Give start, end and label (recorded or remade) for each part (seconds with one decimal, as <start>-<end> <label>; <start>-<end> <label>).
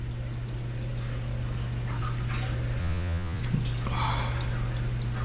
0.0-2.8 recorded; 2.8-3.4 remade; 3.4-5.2 recorded